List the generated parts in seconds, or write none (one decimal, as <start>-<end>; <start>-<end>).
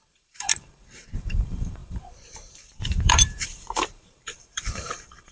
0.0-5.3